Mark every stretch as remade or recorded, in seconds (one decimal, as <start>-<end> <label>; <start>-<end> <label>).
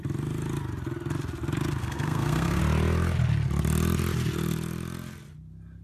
0.0-1.8 recorded; 1.8-2.6 remade; 2.6-5.8 recorded